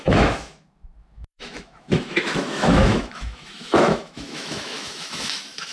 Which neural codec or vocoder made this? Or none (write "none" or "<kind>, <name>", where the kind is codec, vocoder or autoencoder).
autoencoder, DAC-VAE